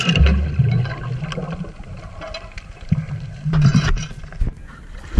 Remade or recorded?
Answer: recorded